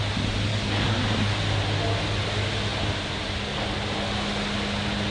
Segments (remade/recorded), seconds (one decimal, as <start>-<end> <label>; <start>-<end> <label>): 0.0-0.5 recorded; 0.5-1.0 remade; 1.0-5.1 recorded